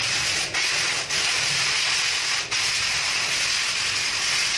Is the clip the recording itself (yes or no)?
yes